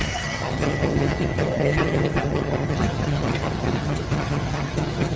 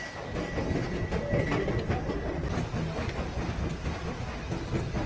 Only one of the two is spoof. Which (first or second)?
first